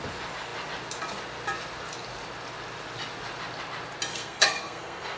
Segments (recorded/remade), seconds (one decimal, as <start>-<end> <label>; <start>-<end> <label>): 0.0-4.1 recorded; 4.1-5.2 remade

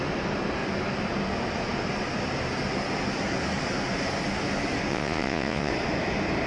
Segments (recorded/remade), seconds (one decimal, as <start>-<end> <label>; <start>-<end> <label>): 0.0-4.9 recorded; 4.9-5.7 remade; 5.7-6.5 recorded

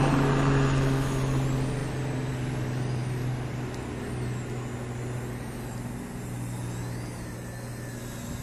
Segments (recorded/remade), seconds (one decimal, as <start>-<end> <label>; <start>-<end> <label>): 0.0-8.4 recorded

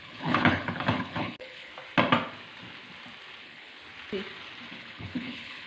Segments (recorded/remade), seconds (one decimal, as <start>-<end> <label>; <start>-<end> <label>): 0.0-1.7 remade; 1.7-3.4 recorded; 3.4-3.8 remade; 3.8-4.7 recorded; 4.7-5.7 remade

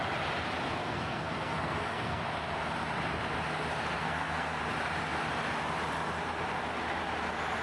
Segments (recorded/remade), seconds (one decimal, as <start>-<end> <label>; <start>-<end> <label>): 0.0-0.8 recorded; 0.8-2.2 remade; 2.2-4.0 recorded; 4.0-4.6 remade; 4.6-7.6 recorded